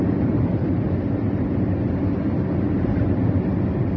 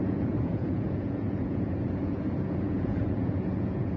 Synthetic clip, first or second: second